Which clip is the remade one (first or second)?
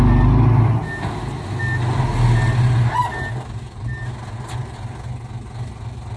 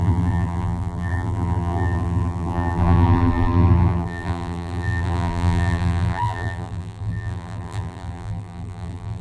second